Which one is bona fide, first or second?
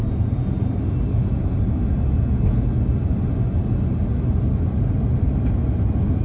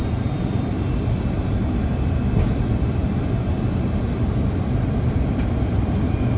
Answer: first